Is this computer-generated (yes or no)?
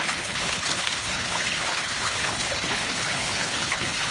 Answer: yes